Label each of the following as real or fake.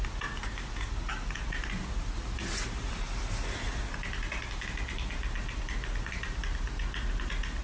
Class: real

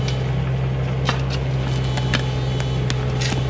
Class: real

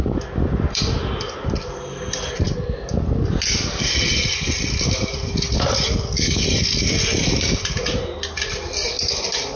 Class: real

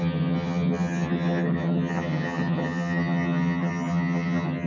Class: fake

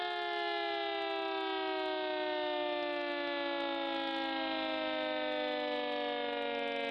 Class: real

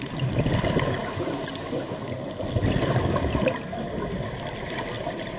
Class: real